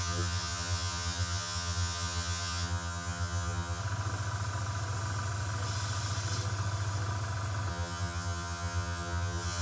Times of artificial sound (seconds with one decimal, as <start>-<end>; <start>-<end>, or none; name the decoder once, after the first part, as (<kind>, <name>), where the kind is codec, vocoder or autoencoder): 0.0-3.8 (vocoder, HiFi-GAN); 7.7-9.6